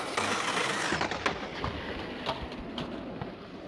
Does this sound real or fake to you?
real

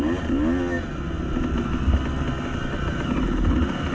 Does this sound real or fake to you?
real